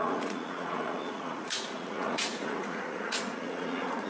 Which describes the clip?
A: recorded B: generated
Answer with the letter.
B